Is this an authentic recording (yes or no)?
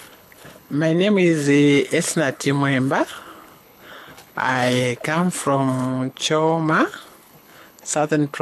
no